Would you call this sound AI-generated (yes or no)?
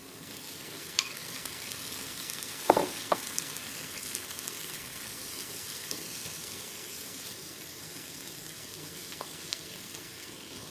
yes